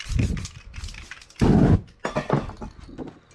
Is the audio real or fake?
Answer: real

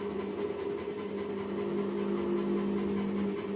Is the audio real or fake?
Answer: real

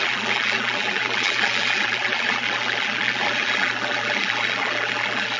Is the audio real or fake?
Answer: fake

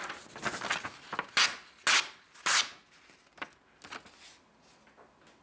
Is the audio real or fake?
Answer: real